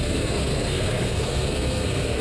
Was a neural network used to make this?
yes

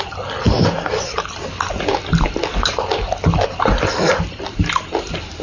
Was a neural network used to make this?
no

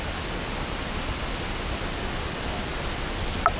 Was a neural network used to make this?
no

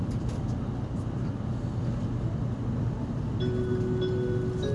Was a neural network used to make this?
no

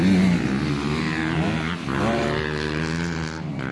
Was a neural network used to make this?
no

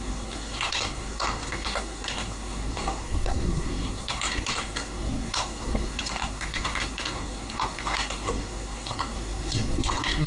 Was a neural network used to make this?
yes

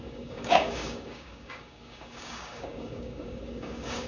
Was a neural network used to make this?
yes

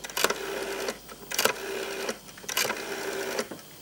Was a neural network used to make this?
no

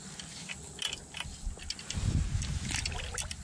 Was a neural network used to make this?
no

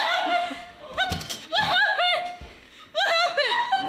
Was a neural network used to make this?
yes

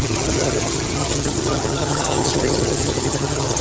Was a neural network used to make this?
yes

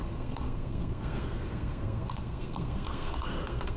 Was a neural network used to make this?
yes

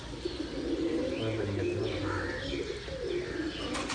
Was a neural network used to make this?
no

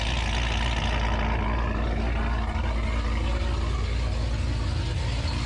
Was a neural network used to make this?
no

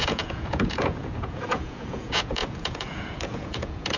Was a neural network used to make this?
yes